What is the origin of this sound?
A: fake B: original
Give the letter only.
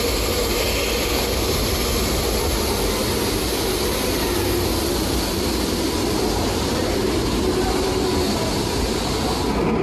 B